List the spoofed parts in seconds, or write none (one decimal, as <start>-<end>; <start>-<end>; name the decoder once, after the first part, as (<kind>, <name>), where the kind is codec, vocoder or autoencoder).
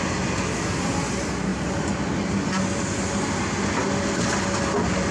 none